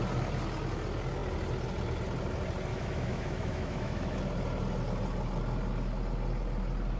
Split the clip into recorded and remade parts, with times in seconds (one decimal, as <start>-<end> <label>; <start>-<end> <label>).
0.0-2.7 recorded; 2.7-4.2 remade; 4.2-7.0 recorded